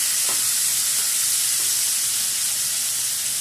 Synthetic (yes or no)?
no